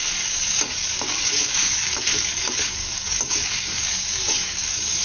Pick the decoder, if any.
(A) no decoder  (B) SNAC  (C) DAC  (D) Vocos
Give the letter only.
C